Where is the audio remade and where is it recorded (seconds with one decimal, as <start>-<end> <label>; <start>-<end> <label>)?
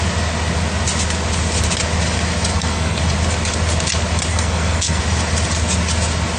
0.0-2.5 recorded; 2.5-3.0 remade; 3.0-4.3 recorded; 4.3-5.0 remade; 5.0-6.4 recorded